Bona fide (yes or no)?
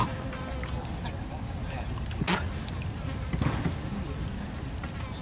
yes